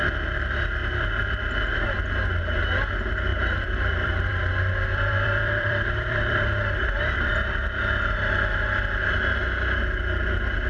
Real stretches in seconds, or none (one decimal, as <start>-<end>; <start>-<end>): 0.0-3.3; 7.2-10.7